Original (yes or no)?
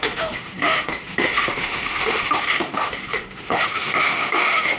no